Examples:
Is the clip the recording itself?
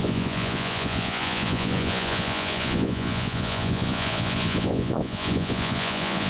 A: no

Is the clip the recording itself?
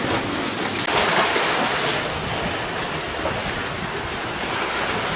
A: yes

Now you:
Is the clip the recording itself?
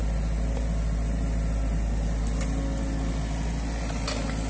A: yes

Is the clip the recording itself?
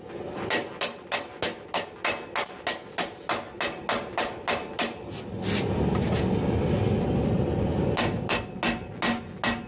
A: yes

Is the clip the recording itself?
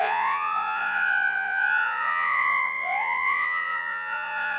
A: no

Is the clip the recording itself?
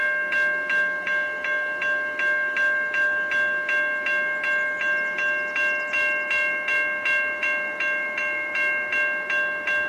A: yes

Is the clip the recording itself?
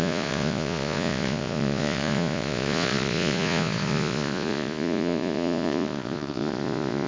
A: no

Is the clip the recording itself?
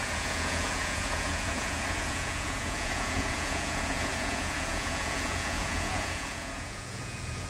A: no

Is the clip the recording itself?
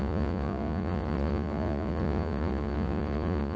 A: no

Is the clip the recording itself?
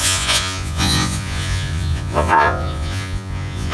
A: no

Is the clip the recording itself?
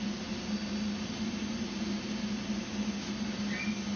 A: yes